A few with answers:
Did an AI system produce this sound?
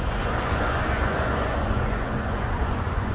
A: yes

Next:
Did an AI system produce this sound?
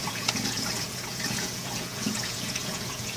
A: yes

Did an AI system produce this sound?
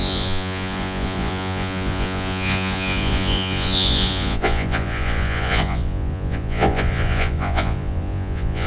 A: yes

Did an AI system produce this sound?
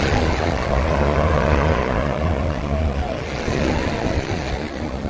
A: yes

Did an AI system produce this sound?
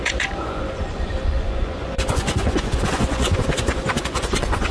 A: yes